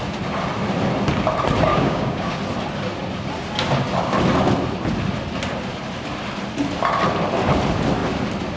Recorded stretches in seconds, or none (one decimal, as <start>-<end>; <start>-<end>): 0.0-1.7; 2.4-8.6